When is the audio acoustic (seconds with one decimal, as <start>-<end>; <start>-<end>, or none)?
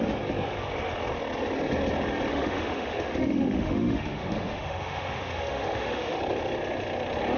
0.0-2.3; 6.2-7.4